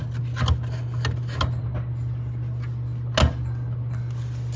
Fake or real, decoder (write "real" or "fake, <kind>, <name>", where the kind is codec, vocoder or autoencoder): real